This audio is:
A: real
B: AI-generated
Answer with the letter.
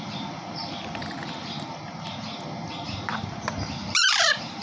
B